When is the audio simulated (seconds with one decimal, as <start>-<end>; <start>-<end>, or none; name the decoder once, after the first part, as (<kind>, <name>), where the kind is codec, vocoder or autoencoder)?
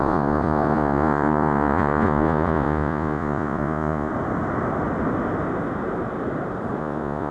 0.0-4.1 (vocoder, Vocos); 6.8-7.3